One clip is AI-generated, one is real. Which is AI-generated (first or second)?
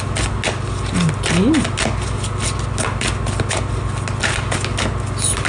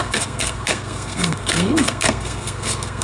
second